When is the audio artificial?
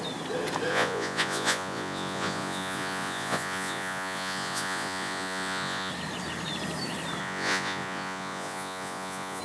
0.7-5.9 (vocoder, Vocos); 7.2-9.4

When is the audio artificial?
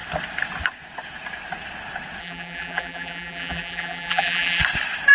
2.2-4.6 (vocoder, BigVGAN v2)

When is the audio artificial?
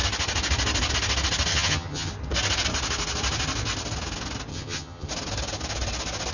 1.5-2.1 (vocoder, HiFi-GAN); 4.5-5.1